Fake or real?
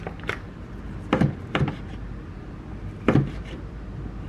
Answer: real